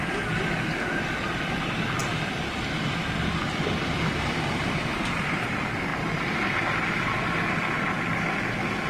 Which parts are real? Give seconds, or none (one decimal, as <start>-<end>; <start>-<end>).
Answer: 5.9-6.9